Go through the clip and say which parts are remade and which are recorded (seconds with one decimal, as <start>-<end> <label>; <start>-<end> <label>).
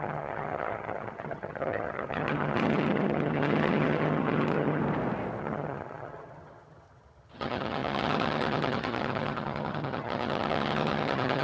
0.0-4.8 remade; 4.8-5.4 recorded; 5.4-11.4 remade